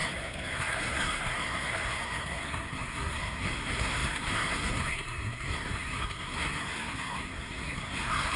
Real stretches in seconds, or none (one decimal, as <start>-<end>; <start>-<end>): none